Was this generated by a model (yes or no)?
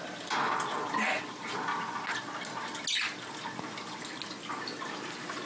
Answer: no